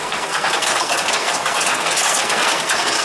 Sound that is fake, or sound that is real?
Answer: fake